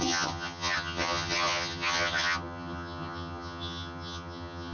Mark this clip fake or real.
fake